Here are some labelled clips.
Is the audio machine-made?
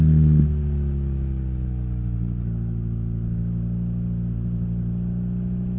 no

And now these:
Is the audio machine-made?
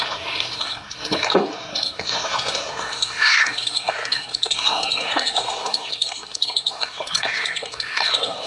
yes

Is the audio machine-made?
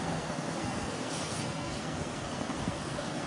yes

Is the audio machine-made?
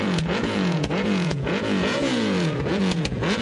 yes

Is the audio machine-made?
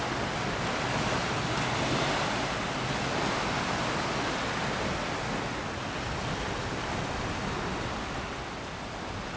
no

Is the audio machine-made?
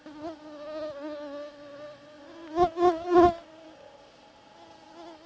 no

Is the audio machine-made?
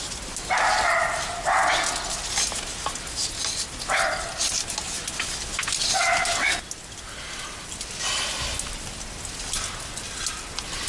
no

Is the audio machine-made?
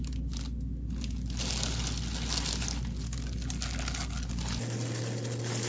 no